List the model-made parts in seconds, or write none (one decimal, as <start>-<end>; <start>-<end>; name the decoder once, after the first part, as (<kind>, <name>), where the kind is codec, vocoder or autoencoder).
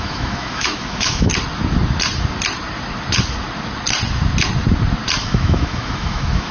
0.0-1.3 (autoencoder, DAC-VAE); 5.2-6.5